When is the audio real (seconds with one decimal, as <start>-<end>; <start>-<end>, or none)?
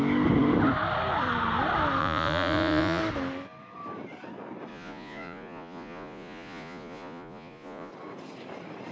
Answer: 0.0-2.0; 3.0-4.7; 7.9-8.9